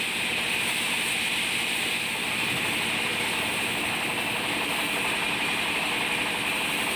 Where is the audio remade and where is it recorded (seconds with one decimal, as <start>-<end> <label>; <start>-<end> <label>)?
0.0-7.0 recorded